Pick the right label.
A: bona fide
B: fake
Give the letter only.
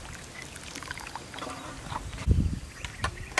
A